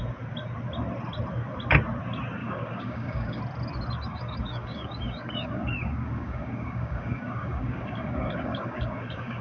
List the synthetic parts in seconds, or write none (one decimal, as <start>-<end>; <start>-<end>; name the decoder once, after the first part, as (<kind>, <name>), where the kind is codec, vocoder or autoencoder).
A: 2.4-3.4 (codec, DAC); 4.1-9.4